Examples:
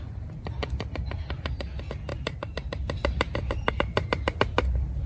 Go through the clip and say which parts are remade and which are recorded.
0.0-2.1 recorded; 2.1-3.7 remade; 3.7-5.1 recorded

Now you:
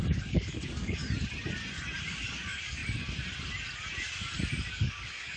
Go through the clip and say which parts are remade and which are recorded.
0.0-1.0 remade; 1.0-2.1 recorded; 2.1-2.8 remade; 2.8-4.7 recorded; 4.7-5.4 remade

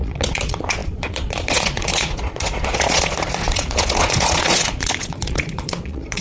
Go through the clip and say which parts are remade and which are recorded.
0.0-6.2 remade

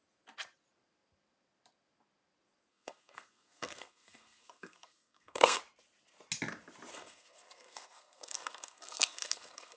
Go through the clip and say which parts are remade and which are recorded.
0.0-2.7 recorded; 2.7-5.6 remade; 5.6-6.9 recorded; 6.9-9.8 remade

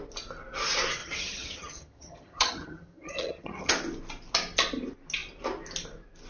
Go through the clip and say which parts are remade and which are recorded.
0.0-1.0 recorded; 1.0-3.7 remade; 3.7-6.3 recorded